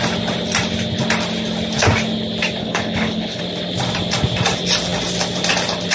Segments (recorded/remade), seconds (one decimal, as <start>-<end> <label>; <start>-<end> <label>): 0.0-2.6 recorded; 2.6-3.4 remade; 3.4-5.9 recorded